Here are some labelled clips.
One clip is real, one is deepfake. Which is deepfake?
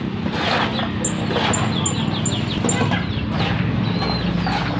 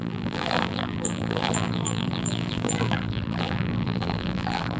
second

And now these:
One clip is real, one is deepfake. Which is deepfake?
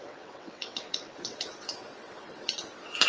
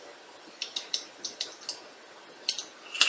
first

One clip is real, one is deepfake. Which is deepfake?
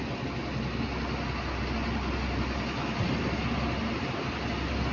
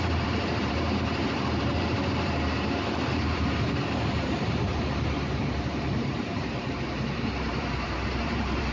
second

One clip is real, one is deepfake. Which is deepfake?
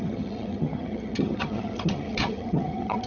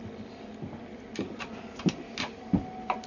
first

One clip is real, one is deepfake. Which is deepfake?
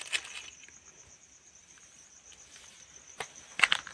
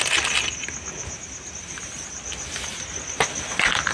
first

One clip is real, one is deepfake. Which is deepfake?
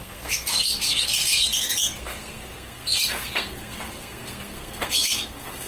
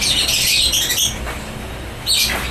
first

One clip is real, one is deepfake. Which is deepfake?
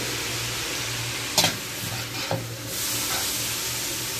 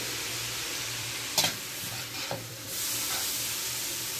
second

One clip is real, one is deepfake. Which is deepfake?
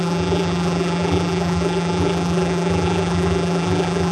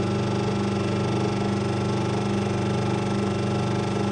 first